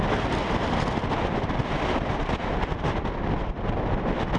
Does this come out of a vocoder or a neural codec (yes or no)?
no